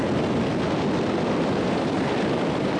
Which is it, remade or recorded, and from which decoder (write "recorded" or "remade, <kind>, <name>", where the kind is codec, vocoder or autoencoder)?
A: remade, vocoder, BigVGAN v2